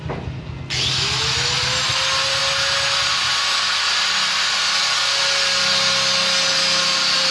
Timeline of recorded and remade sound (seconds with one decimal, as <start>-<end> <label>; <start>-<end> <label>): 0.0-7.3 recorded